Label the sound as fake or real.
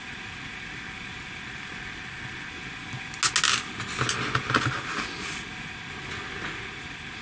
real